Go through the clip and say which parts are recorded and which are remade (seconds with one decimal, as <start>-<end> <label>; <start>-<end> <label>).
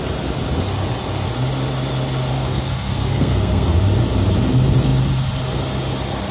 0.0-2.3 recorded; 2.3-3.8 remade; 3.8-6.3 recorded